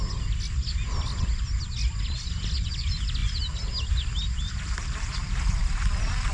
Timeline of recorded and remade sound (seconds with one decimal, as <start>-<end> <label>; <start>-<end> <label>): 0.0-6.3 recorded